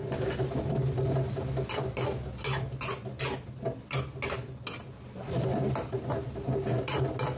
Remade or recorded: recorded